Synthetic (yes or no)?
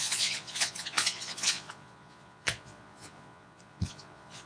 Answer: yes